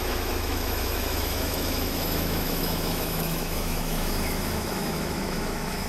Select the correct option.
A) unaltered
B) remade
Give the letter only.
B